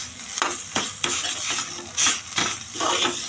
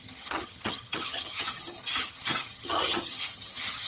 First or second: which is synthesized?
second